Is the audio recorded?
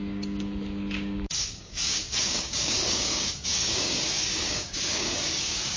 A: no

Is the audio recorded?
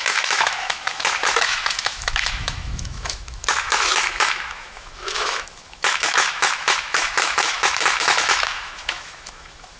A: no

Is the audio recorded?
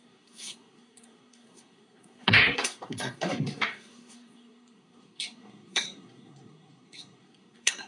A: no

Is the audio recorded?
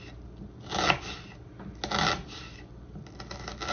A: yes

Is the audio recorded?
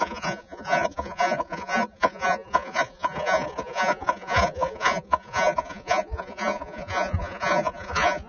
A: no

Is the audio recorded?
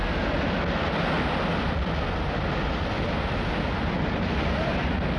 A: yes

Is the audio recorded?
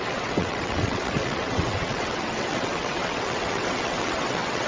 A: no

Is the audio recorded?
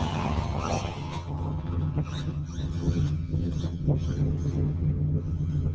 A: no